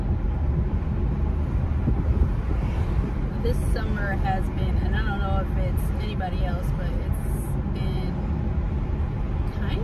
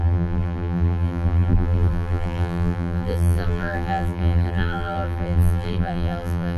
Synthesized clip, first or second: second